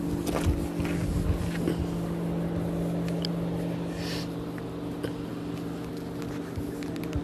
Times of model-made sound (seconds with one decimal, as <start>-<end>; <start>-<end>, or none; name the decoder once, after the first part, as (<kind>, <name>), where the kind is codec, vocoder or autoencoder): none